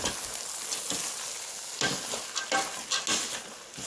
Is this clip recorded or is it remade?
recorded